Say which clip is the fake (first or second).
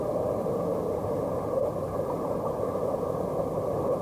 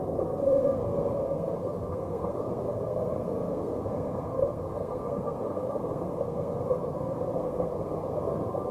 second